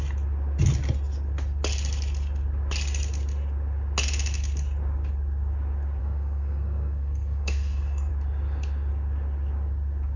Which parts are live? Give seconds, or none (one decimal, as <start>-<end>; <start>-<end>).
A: 0.0-6.0; 8.1-10.2